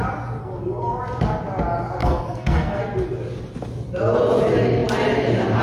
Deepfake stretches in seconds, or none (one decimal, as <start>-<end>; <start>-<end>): 0.4-1.0; 2.0-2.8